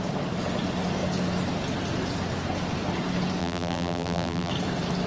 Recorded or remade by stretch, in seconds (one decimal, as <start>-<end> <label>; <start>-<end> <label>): 0.0-3.4 recorded; 3.4-4.5 remade; 4.5-5.1 recorded